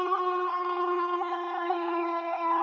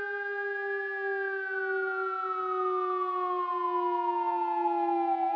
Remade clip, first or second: first